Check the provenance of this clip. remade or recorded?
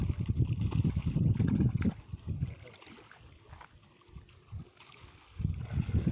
recorded